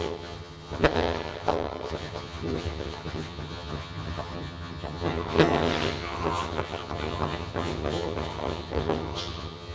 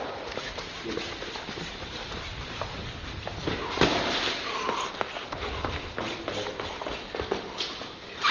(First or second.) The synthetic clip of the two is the first